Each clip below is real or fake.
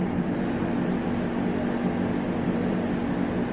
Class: real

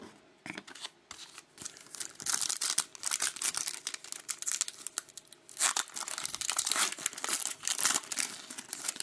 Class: real